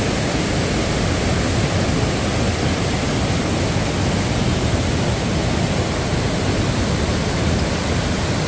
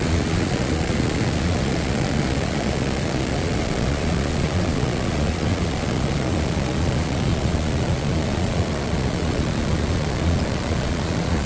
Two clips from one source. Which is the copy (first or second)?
second